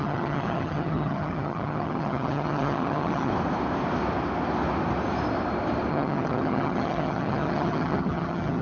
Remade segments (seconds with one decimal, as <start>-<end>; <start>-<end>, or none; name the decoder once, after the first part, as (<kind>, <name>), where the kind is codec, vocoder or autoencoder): 0.0-3.3 (vocoder, HiFi-GAN); 5.9-8.6